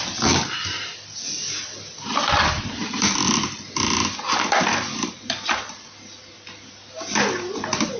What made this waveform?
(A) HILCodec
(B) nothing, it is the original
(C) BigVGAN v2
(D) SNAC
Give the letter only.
C